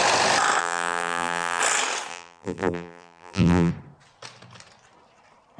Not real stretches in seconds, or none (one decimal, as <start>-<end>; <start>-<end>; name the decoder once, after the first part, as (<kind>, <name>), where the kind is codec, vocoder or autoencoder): 0.6-1.6 (vocoder, BigVGAN v2); 2.1-3.7